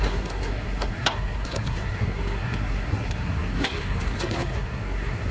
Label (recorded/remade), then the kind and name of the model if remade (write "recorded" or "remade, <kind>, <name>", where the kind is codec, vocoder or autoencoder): remade, codec, SNAC